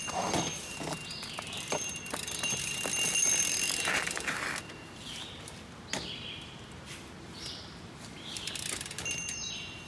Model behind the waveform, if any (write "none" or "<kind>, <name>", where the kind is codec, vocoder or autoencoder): vocoder, BigVGAN v2